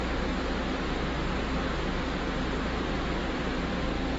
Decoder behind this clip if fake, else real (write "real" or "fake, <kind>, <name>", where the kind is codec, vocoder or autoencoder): real